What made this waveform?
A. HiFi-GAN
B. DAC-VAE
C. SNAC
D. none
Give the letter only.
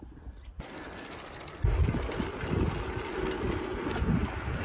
D